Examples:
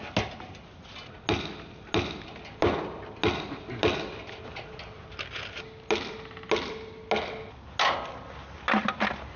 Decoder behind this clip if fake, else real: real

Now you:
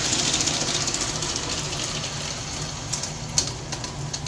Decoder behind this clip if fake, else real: real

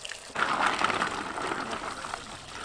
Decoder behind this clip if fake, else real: real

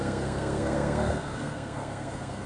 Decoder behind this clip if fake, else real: fake, codec, SNAC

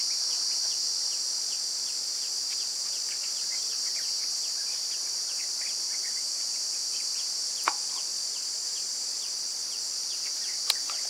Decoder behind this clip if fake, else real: real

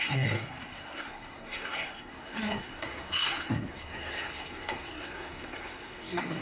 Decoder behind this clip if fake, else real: fake, codec, SNAC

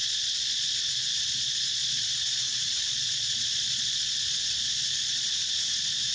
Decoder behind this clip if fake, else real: fake, vocoder, Vocos